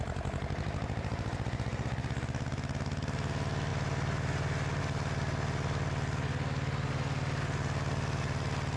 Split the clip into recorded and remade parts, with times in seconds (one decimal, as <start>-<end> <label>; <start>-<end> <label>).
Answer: 0.0-8.8 recorded